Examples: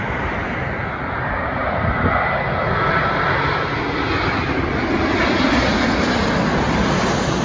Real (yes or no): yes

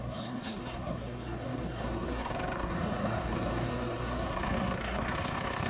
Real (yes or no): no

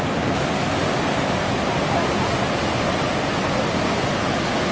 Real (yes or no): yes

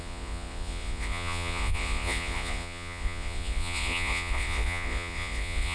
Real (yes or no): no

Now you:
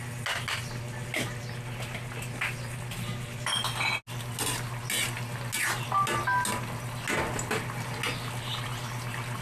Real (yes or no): yes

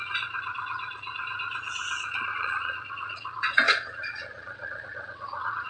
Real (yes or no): no